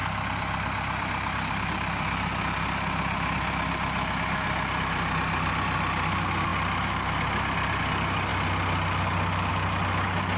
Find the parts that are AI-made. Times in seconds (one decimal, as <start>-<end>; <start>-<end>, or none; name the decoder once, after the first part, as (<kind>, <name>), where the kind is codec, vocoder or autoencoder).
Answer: 0.0-2.4 (vocoder, BigVGAN v2)